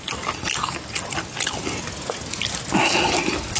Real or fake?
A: real